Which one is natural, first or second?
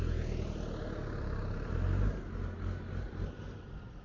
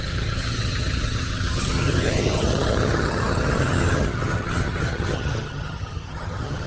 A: first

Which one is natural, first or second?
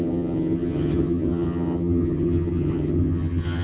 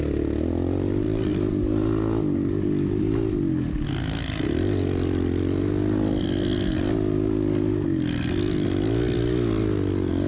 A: second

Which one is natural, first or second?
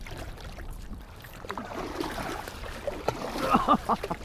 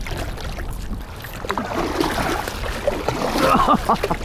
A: second